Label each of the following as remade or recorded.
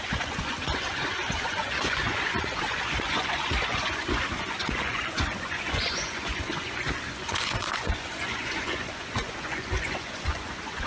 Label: remade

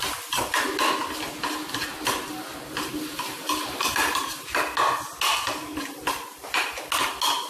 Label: recorded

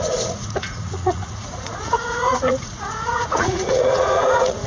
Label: remade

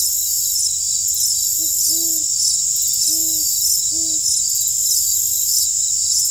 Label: recorded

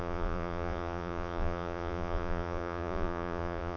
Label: remade